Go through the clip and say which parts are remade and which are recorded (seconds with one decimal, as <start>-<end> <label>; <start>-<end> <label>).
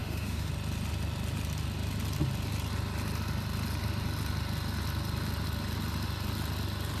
0.0-0.5 remade; 0.5-7.0 recorded